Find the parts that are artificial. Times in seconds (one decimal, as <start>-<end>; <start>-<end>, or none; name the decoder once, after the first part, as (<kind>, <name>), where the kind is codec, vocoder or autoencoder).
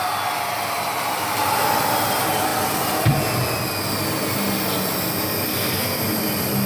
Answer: 5.5-6.0 (codec, SNAC)